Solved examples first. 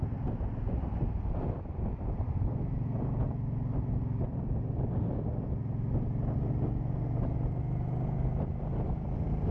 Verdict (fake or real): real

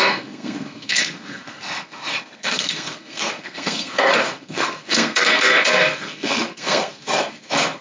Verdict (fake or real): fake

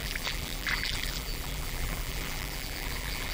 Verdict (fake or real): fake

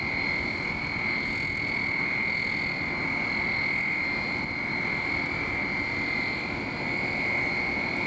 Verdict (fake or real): real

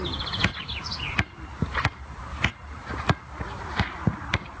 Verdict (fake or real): fake